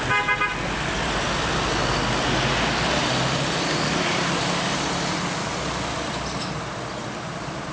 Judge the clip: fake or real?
real